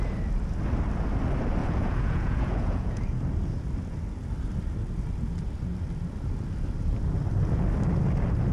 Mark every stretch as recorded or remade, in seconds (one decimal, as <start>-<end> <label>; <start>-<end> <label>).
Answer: 0.0-1.6 recorded; 1.6-3.0 remade; 3.0-8.5 recorded